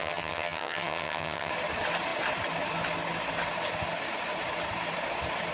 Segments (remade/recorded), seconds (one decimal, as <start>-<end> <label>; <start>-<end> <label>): 0.0-1.5 remade; 1.5-5.5 recorded